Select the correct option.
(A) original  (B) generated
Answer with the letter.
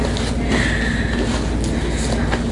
A